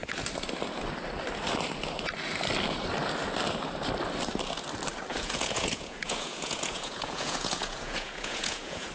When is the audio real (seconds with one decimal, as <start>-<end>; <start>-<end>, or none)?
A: 0.0-5.1